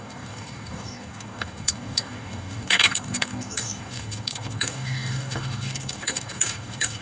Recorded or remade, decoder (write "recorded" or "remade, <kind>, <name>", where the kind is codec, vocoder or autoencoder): remade, codec, DAC